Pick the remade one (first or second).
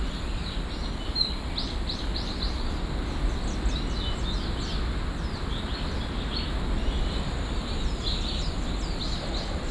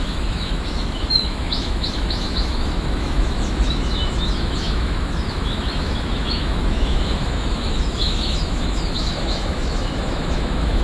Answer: second